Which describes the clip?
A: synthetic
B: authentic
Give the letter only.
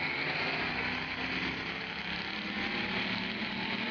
B